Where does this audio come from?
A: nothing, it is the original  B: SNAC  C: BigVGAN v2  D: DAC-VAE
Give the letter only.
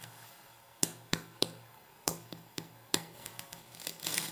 B